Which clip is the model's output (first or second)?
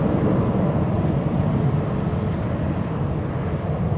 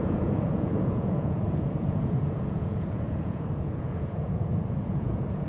second